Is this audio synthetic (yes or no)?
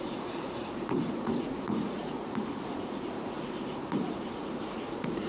yes